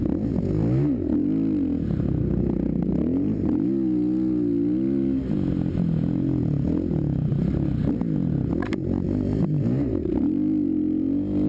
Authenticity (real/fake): real